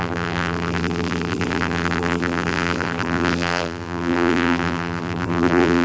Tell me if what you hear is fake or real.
fake